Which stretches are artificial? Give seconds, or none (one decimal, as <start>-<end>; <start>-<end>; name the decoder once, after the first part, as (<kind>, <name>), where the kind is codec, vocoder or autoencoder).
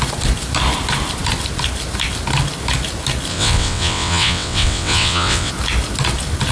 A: 3.3-5.5 (vocoder, WaveNeXt)